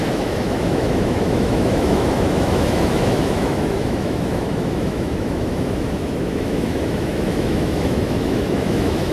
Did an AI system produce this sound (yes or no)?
yes